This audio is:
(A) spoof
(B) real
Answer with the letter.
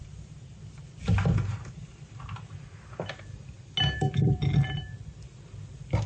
B